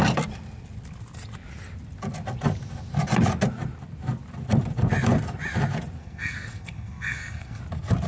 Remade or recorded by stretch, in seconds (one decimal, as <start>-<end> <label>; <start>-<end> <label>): 0.0-6.0 recorded; 6.0-7.6 remade; 7.6-8.1 recorded